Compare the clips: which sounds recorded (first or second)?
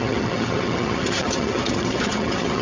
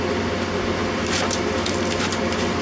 second